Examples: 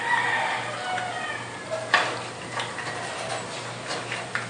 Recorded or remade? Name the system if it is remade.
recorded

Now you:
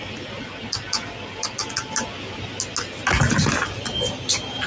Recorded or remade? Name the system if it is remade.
recorded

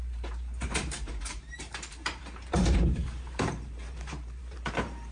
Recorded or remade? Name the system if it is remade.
remade, vocoder, BigVGAN v2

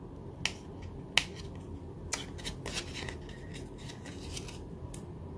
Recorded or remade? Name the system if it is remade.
recorded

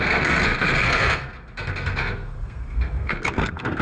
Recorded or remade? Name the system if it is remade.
remade, codec, SNAC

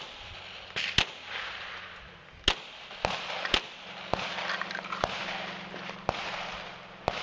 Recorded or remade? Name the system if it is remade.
recorded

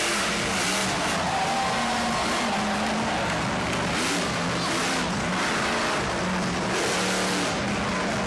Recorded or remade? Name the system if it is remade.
recorded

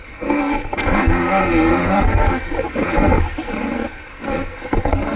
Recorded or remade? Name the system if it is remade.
remade, codec, SNAC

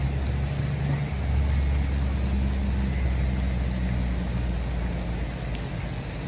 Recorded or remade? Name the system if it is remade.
recorded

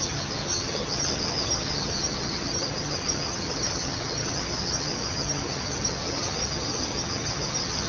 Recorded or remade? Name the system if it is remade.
remade, vocoder, HiFi-GAN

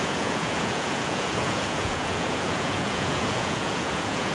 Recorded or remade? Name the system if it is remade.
remade, vocoder, Vocos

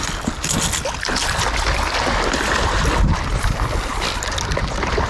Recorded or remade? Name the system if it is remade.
recorded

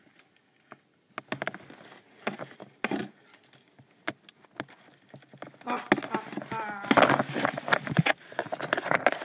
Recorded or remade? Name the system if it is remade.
recorded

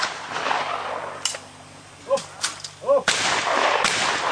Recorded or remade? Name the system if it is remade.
recorded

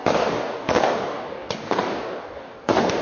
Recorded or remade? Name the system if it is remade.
remade, codec, DAC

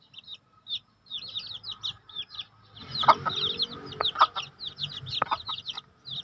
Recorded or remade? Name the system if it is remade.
recorded